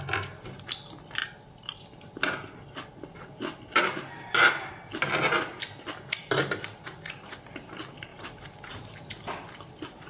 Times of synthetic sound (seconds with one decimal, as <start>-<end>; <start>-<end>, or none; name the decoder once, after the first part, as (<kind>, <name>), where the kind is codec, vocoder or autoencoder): 1.2-1.8 (vocoder, BigVGAN v2); 8.1-9.1